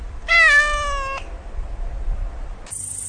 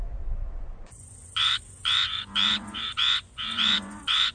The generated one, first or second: second